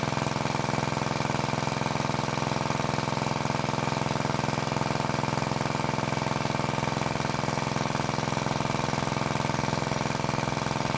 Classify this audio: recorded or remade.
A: recorded